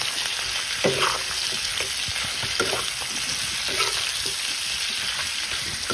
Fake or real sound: real